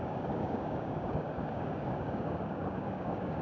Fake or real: fake